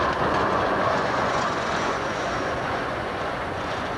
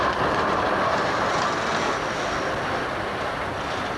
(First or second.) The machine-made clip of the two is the first